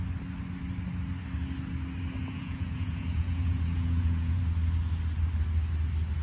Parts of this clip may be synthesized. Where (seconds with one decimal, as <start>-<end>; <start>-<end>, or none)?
2.2-4.4